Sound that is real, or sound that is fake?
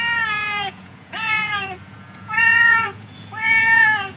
fake